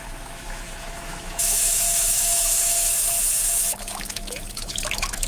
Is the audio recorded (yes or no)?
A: no